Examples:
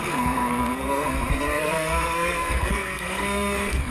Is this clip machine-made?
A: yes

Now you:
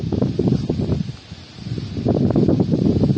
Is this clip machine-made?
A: no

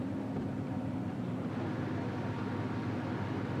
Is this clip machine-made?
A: no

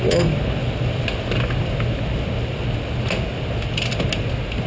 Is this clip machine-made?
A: no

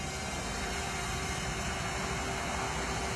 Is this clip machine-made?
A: no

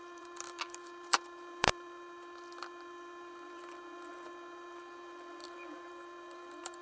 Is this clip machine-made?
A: yes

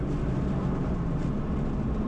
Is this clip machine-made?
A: no